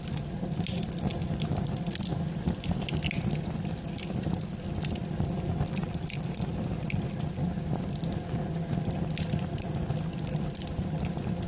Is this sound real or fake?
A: real